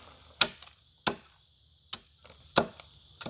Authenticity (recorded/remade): recorded